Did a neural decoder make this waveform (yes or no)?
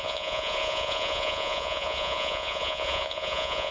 yes